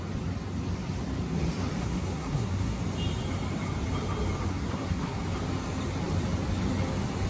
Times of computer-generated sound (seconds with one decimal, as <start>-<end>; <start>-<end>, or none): 1.8-2.8; 4.5-5.2